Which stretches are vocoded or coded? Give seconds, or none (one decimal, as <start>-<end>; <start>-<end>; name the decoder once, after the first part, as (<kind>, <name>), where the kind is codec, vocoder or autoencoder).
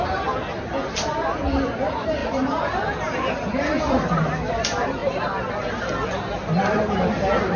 2.2-4.1 (vocoder, BigVGAN v2)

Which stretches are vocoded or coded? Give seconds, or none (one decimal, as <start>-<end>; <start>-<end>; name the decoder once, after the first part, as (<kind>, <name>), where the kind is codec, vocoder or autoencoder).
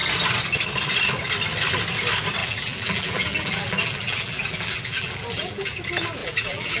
2.4-5.8 (vocoder, BigVGAN v2); 6.2-6.8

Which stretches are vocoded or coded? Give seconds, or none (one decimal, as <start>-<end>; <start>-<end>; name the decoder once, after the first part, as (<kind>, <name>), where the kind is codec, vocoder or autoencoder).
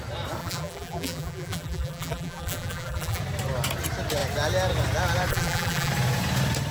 0.4-3.2 (vocoder, BigVGAN v2); 5.3-5.9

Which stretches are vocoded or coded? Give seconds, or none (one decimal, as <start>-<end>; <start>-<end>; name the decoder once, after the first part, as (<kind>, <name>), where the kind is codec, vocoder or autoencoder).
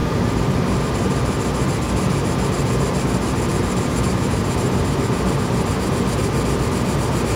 0.0-0.8 (vocoder, BigVGAN v2); 3.5-4.8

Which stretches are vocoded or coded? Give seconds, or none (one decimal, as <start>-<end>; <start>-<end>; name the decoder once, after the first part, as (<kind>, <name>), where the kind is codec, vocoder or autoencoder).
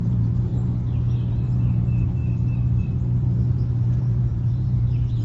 0.0-0.5 (vocoder, BigVGAN v2); 1.3-2.2; 2.8-5.2